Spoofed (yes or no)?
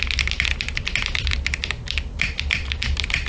yes